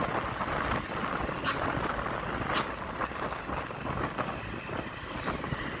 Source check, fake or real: real